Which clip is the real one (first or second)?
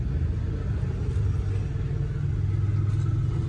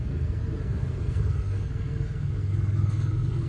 first